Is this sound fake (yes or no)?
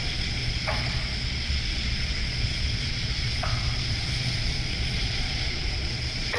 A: yes